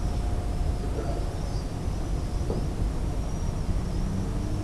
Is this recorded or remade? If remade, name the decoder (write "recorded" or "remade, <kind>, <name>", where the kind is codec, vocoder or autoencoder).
recorded